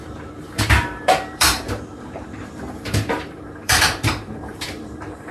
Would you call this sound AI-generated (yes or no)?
yes